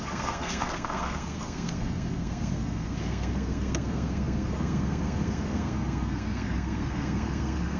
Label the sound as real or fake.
fake